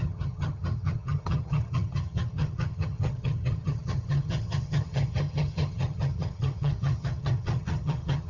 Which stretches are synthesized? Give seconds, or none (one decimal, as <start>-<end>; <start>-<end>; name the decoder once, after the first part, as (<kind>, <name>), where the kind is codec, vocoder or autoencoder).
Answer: 0.0-8.3 (vocoder, HiFi-GAN)